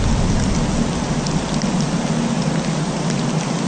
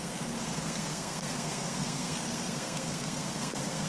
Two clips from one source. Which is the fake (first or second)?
second